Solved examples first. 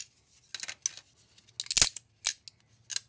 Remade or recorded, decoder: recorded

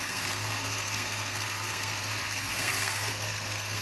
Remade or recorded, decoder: remade, codec, SNAC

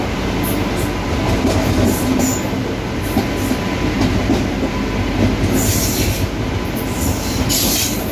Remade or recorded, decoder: recorded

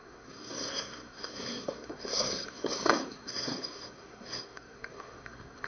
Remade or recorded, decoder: remade, codec, SNAC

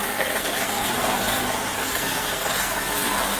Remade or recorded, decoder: remade, codec, SNAC